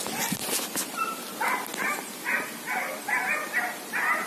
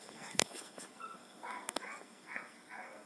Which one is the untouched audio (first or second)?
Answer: first